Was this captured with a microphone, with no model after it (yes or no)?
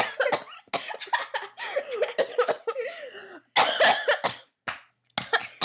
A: yes